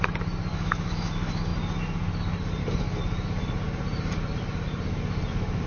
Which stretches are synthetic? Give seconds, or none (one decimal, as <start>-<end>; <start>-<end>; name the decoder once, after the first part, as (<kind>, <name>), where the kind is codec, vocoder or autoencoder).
0.5-1.1 (autoencoder, DAC-VAE)